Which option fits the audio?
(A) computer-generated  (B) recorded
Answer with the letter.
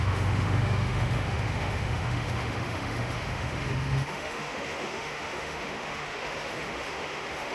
A